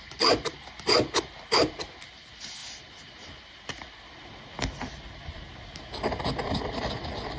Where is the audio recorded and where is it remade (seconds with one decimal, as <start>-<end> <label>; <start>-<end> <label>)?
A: 0.0-7.4 recorded